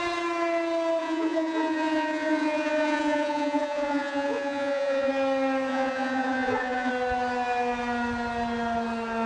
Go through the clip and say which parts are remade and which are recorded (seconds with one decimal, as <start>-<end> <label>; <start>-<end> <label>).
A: 0.0-1.0 recorded; 1.0-5.1 remade; 5.1-5.7 recorded; 5.7-6.9 remade; 6.9-9.3 recorded